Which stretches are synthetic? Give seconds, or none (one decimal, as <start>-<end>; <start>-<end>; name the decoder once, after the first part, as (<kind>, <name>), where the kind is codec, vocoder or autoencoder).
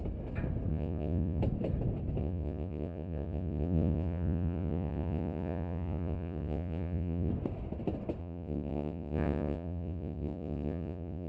0.7-1.4 (vocoder, Vocos); 2.2-7.3; 8.2-11.3